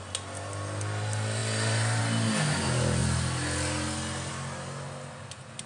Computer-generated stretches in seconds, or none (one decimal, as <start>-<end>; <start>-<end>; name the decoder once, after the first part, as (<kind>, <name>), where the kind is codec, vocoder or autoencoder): none